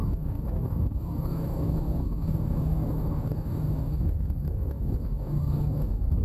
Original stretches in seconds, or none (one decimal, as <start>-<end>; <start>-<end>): none